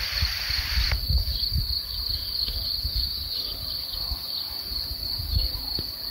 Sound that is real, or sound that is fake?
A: fake